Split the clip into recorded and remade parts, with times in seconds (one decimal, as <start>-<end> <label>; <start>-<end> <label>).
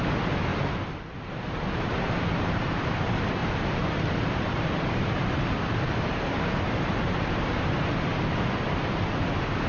0.0-0.5 recorded; 0.5-2.1 remade; 2.1-3.4 recorded; 3.4-7.9 remade; 7.9-9.7 recorded